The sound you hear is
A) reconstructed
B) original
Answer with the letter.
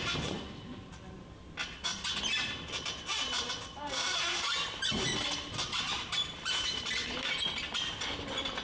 B